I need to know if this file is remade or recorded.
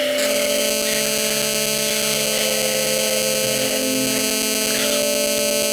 recorded